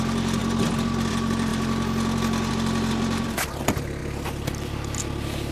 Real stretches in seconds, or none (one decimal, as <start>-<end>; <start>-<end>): 0.4-1.1; 1.5-2.5; 4.0-5.5